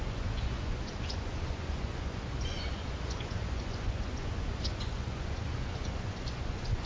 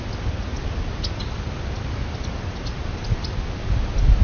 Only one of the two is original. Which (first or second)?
second